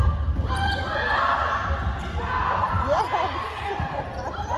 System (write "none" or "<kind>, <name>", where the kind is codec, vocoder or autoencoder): none